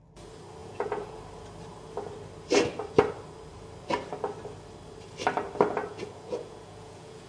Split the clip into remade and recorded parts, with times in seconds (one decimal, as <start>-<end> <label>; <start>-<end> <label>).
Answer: 0.0-0.6 recorded; 0.6-1.2 remade; 1.2-5.8 recorded; 5.8-7.3 remade